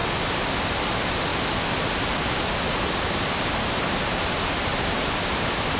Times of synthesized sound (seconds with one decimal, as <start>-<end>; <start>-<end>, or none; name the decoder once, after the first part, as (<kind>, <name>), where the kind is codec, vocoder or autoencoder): 1.3-3.9 (vocoder, BigVGAN v2); 4.7-5.8